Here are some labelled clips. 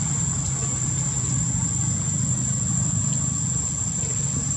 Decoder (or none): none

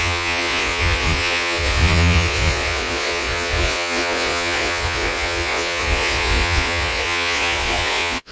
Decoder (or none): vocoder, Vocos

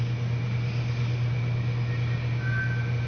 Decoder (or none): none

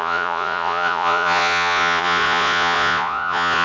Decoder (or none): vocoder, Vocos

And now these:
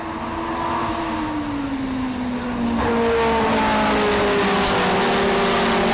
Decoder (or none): none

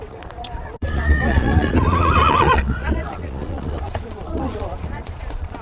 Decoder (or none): vocoder, Vocos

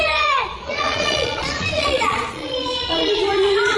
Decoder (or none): vocoder, Vocos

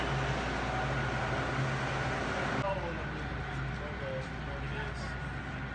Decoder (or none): none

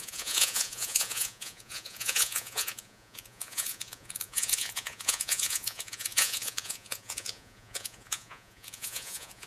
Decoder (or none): vocoder, Vocos